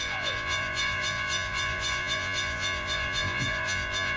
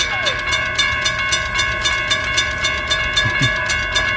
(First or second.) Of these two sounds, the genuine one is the second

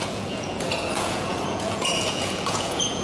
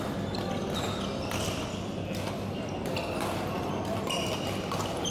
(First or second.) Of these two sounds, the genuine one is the second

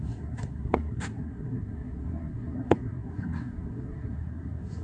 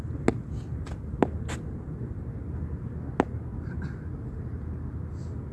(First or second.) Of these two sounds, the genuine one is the second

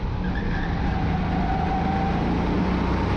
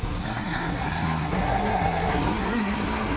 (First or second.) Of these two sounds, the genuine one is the first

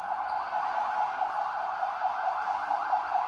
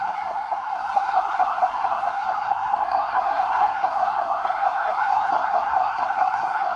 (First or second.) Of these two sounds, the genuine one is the first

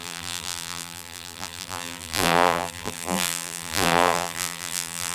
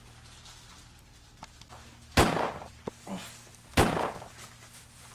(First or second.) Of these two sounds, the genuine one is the second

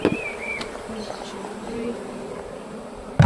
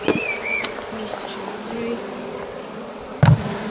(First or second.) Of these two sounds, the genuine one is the second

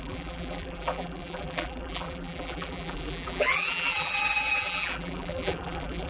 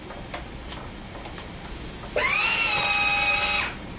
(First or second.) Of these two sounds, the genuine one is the second